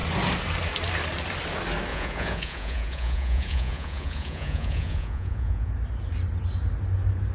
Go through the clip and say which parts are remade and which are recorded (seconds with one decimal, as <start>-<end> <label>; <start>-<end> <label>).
0.0-1.9 recorded; 1.9-5.7 remade; 5.7-7.3 recorded